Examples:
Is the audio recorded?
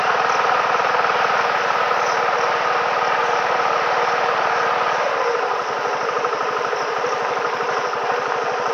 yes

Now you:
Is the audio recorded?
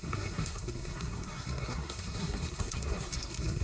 no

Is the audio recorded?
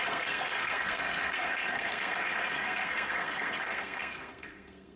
no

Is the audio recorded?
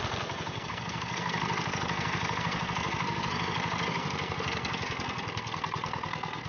no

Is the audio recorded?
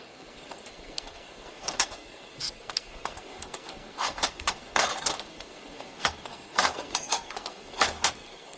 no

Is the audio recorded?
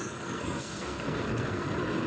no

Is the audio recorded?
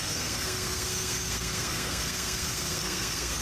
no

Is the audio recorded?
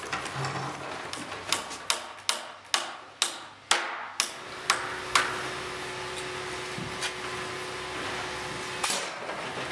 yes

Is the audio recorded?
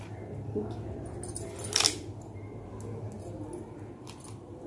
yes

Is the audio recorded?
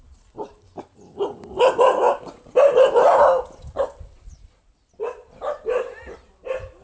yes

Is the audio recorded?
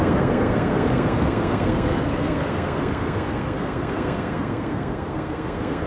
no